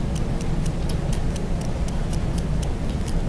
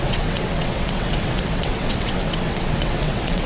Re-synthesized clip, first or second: second